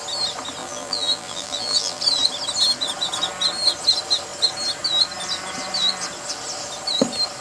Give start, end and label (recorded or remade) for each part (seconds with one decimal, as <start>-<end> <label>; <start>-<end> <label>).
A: 0.0-0.6 recorded; 0.6-2.0 remade; 2.0-7.4 recorded